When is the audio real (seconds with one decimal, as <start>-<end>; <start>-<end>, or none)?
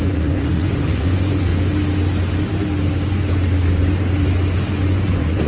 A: 1.5-4.8